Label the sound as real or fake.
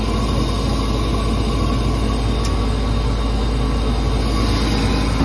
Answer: real